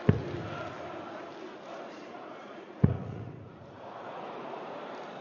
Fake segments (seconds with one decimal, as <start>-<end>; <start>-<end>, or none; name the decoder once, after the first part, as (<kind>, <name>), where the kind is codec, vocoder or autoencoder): 1.7-4.8 (vocoder, Vocos)